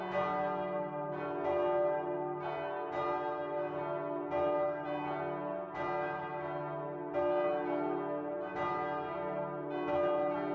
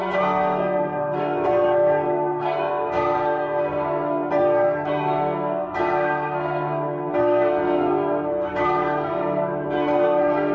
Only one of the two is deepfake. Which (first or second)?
second